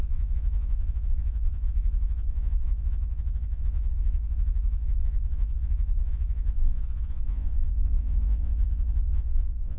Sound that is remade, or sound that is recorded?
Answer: remade